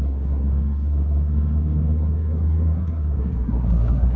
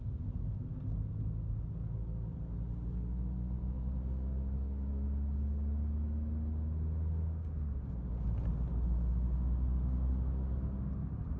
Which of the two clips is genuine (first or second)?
second